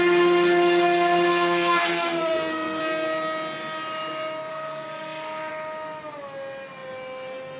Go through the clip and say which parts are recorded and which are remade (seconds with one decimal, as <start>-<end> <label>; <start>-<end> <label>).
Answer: 0.0-1.3 recorded; 1.3-2.8 remade; 2.8-4.5 recorded; 4.5-5.5 remade; 5.5-7.6 recorded